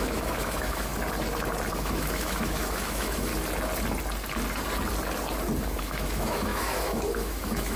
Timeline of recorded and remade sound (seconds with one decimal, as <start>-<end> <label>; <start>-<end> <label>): 0.0-0.9 remade; 0.9-1.7 recorded; 1.7-3.3 remade; 3.3-5.8 recorded; 5.8-7.8 remade